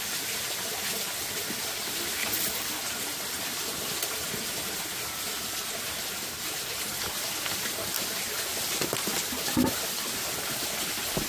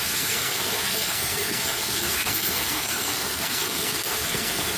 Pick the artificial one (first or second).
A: second